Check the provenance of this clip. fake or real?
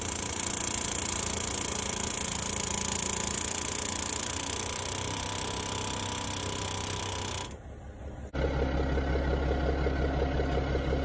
real